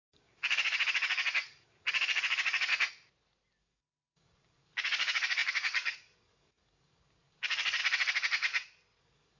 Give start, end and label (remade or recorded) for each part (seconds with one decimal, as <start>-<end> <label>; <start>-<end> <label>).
0.0-2.7 remade; 2.7-3.6 recorded; 3.6-7.8 remade; 7.8-9.0 recorded; 9.0-9.4 remade